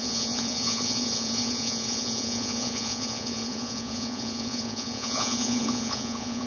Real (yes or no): no